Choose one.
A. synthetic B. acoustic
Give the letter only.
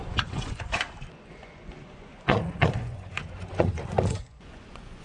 A